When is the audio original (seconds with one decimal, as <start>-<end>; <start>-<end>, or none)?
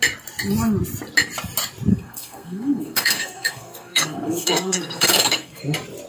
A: 0.0-1.9; 5.6-6.1